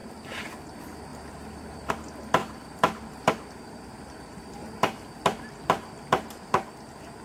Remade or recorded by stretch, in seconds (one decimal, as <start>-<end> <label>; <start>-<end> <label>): 0.0-0.5 remade; 0.5-1.1 recorded; 1.1-1.9 remade; 1.9-2.4 recorded; 2.4-6.7 remade; 6.7-7.2 recorded